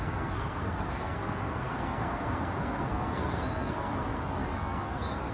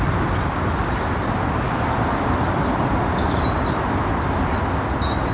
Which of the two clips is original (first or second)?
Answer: second